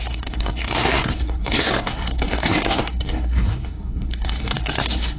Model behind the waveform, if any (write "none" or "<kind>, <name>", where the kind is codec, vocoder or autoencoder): codec, SNAC